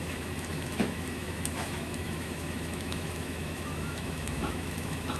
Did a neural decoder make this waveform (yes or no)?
yes